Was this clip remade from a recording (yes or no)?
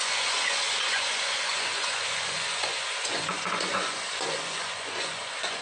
yes